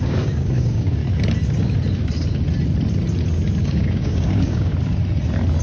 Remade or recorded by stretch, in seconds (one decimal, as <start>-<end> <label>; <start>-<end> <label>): 0.0-1.0 remade; 1.0-3.6 recorded; 3.6-4.7 remade; 4.7-5.6 recorded